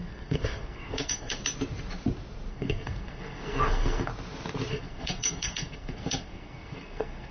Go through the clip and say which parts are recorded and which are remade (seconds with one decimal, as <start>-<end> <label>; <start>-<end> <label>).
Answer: 0.0-1.4 remade; 1.4-2.5 recorded; 2.5-4.1 remade; 4.1-4.7 recorded; 4.7-7.3 remade